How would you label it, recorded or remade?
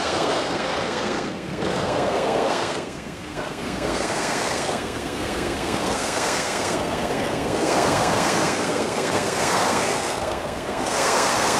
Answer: remade